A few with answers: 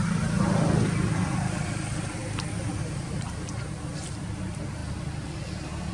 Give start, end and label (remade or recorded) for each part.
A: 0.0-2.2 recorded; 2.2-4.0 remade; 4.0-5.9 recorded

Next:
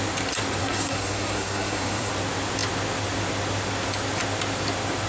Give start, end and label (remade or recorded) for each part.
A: 0.0-0.6 recorded; 0.6-2.1 remade; 2.1-5.1 recorded